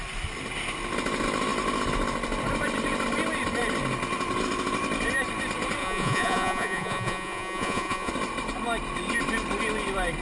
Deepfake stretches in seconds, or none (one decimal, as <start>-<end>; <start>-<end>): 5.8-8.1